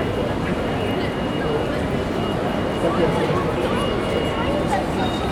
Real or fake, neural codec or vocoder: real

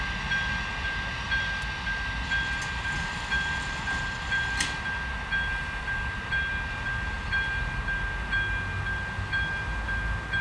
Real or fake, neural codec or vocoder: real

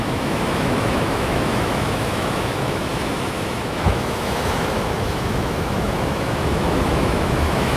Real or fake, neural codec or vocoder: fake, autoencoder, DAC-VAE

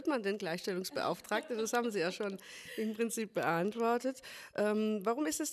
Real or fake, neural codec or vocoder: real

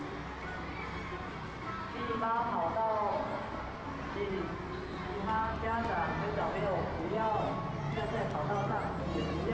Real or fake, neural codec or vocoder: real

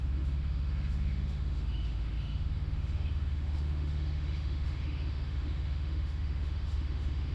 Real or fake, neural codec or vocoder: fake, autoencoder, DAC-VAE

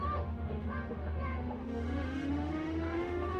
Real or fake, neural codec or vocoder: fake, autoencoder, DAC-VAE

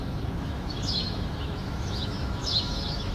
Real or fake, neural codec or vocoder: fake, autoencoder, DAC-VAE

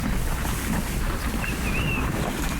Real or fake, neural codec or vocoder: real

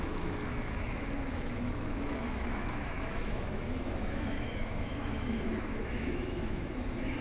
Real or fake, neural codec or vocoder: fake, autoencoder, DAC-VAE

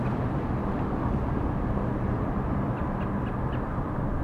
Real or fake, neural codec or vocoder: real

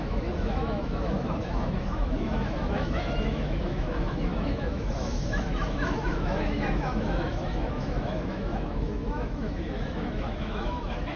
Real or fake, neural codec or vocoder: fake, autoencoder, DAC-VAE